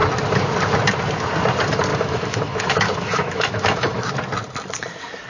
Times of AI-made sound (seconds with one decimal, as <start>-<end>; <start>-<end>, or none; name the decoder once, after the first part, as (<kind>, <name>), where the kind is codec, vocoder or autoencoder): 1.9-4.1 (autoencoder, DAC-VAE)